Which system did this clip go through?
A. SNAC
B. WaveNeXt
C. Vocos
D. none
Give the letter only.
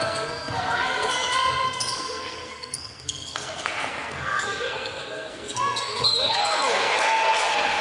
A